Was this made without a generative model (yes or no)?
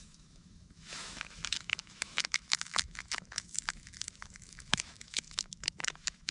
no